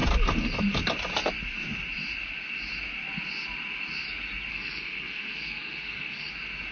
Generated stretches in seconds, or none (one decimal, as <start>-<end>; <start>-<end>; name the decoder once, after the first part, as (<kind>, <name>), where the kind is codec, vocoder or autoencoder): 4.5-6.3 (codec, SNAC)